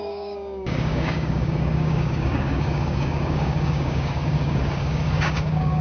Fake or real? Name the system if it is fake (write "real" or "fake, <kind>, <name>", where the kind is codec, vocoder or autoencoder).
fake, codec, DAC